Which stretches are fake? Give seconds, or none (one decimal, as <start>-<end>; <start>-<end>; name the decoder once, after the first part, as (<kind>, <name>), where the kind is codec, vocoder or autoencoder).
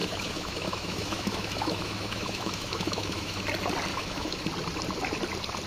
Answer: 0.0-3.4 (autoencoder, DAC-VAE); 3.9-4.4